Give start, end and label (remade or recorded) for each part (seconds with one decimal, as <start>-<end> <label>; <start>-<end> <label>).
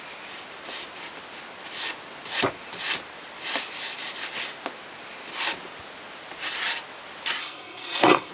0.0-7.4 recorded; 7.4-8.3 remade